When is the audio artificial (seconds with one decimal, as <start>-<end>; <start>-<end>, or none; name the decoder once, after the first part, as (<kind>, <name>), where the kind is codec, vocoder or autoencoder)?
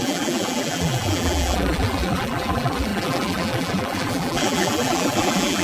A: 0.0-5.6 (vocoder, BigVGAN v2)